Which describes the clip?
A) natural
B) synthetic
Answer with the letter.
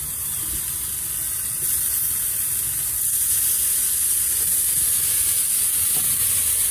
A